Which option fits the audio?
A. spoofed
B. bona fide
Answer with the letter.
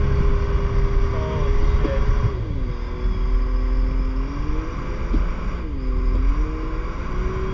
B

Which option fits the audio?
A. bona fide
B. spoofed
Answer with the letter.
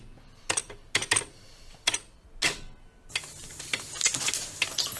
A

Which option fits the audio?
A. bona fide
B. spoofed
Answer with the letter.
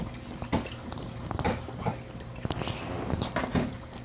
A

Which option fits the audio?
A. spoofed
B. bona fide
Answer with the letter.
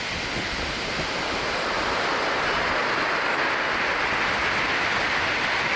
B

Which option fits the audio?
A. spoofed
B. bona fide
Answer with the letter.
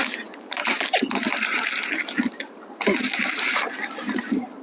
A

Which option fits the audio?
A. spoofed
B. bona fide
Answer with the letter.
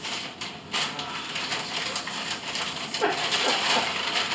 B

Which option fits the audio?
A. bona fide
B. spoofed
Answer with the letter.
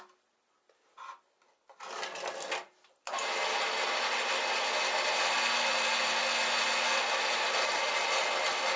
A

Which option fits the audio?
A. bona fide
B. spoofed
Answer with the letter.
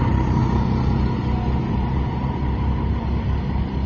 A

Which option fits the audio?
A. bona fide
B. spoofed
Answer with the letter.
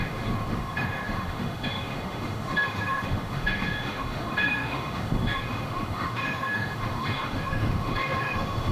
B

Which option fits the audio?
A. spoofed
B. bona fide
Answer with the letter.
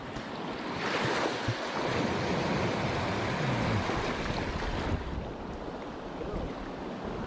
B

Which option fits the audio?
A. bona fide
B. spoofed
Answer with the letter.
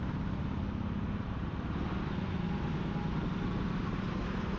A